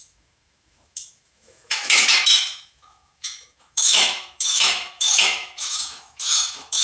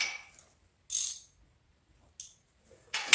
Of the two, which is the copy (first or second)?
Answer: first